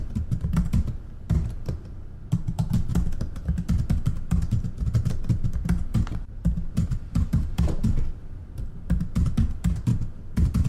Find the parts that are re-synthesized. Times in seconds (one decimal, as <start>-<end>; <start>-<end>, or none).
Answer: 5.9-8.1